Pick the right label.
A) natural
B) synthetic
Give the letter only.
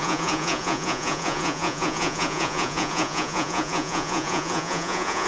B